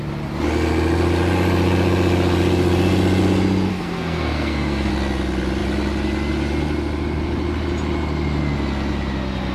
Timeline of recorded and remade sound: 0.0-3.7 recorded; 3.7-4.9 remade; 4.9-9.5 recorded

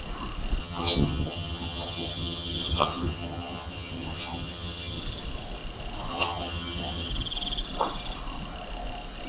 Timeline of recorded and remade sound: 0.0-0.6 recorded; 0.6-5.0 remade; 5.0-6.1 recorded; 6.1-7.1 remade; 7.1-9.3 recorded